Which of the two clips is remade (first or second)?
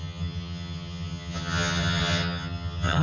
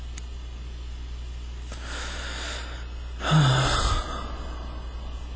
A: first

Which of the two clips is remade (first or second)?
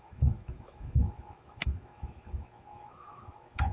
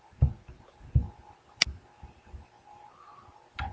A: first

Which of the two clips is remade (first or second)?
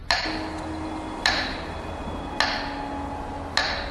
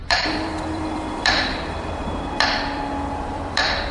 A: second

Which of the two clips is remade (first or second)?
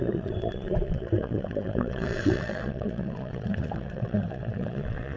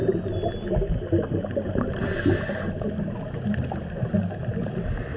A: first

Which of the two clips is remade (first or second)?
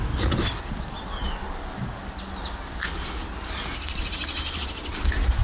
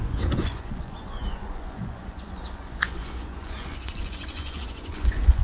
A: second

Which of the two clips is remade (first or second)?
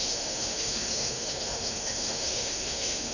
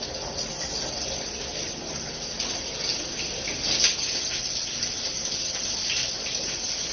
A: first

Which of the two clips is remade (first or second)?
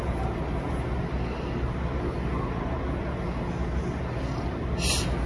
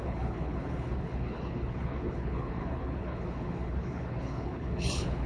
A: second